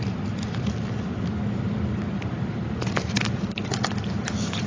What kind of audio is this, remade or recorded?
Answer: recorded